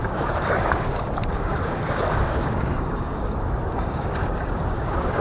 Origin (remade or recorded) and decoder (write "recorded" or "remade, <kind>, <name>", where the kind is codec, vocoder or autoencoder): remade, codec, DAC